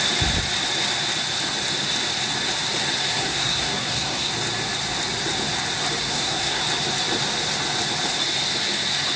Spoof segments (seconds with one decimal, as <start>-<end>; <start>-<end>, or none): 3.0-4.3; 6.0-6.6